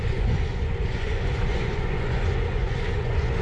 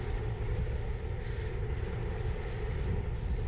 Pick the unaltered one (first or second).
second